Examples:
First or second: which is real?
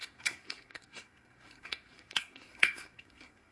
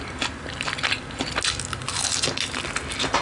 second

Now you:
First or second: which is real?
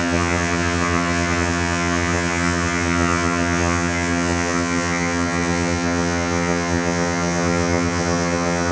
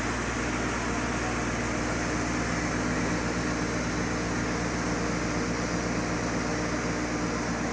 second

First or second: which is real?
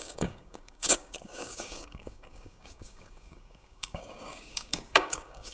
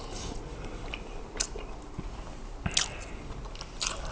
second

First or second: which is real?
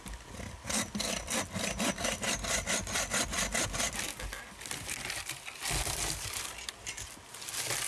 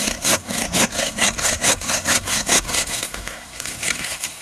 first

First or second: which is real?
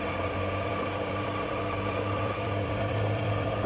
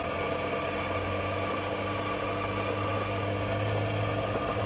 second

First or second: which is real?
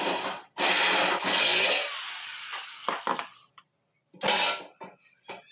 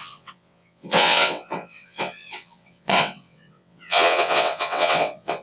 first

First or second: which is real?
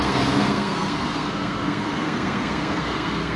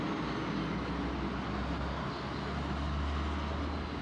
second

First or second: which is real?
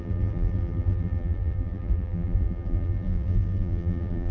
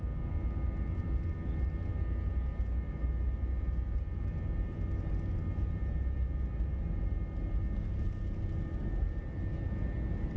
second